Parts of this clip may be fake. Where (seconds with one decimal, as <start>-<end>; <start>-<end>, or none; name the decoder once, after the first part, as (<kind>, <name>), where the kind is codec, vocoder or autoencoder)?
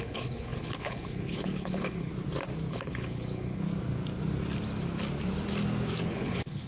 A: 0.0-2.1 (codec, HILCodec); 2.7-3.7; 6.0-6.7